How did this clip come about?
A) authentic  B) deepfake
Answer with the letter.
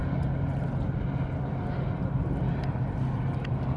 A